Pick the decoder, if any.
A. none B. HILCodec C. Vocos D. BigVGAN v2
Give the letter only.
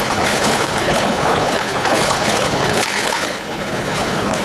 B